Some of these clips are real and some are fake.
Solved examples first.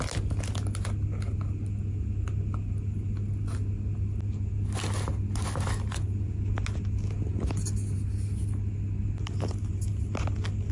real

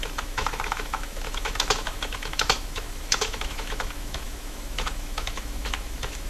fake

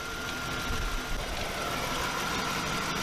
real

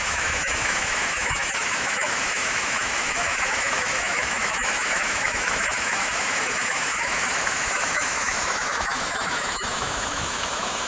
fake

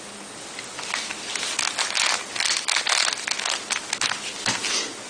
real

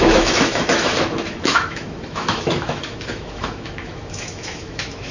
fake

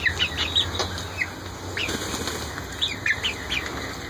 real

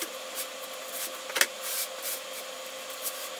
real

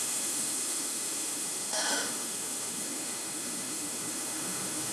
fake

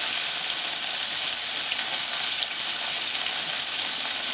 real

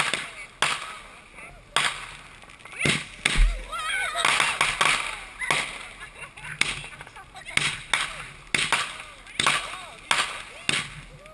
real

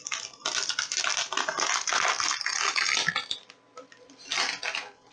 real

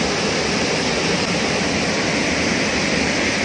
real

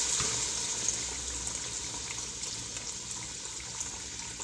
real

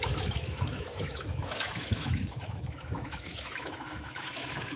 fake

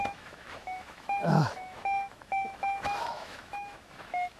fake